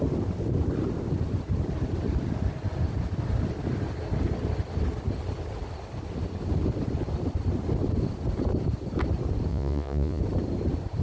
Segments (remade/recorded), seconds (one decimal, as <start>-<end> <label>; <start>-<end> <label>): 0.0-9.5 recorded; 9.5-10.2 remade; 10.2-11.0 recorded